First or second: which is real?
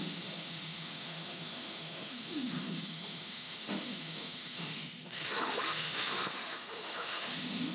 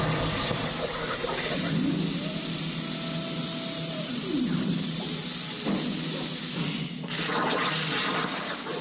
second